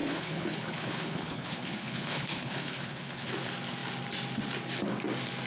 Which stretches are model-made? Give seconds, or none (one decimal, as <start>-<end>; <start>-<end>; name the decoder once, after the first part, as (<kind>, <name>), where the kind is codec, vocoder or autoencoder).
0.0-3.3 (codec, HILCodec)